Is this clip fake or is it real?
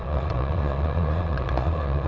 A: fake